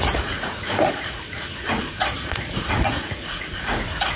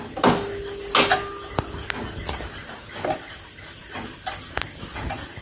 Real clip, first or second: second